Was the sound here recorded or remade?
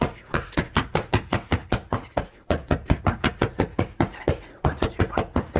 remade